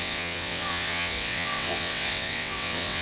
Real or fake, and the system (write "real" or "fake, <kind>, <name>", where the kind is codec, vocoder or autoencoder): fake, vocoder, WaveNeXt